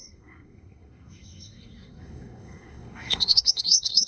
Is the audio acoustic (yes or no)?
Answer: no